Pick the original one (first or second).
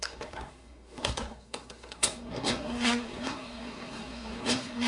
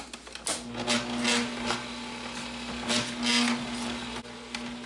second